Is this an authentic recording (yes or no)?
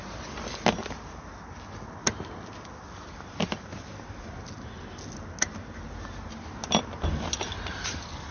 yes